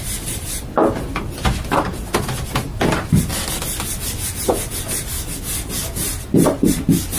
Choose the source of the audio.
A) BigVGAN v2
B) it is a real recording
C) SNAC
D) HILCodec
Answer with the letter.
B